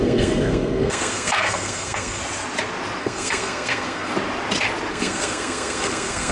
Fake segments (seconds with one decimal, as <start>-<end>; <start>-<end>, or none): 0.0-2.2; 3.0-4.1; 4.9-6.3